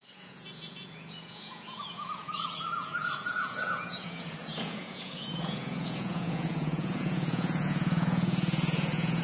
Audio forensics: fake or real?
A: fake